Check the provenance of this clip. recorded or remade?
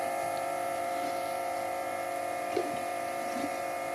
remade